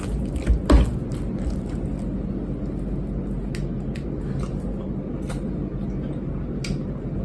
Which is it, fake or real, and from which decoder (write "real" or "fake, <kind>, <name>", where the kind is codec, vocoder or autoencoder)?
real